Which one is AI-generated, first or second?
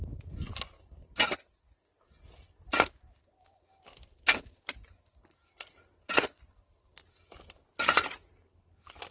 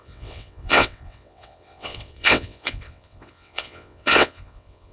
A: second